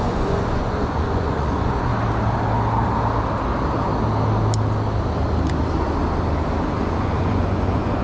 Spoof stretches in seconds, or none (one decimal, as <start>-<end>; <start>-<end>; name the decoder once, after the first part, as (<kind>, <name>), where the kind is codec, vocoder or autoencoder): 0.0-1.9 (vocoder, Vocos); 6.7-8.0